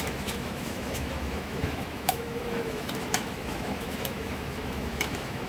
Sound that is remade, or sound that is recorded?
remade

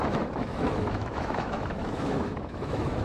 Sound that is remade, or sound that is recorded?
remade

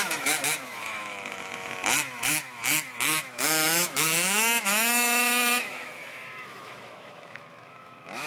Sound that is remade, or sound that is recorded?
remade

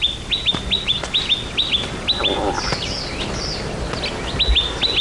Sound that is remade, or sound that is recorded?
recorded